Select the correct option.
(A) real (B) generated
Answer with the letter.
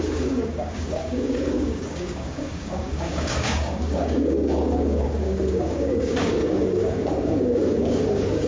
B